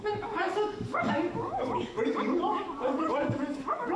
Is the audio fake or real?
fake